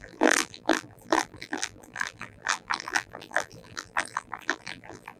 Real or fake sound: fake